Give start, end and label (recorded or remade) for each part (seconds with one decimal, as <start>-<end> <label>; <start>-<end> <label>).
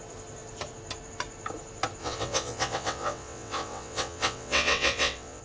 0.0-2.0 recorded; 2.0-5.4 remade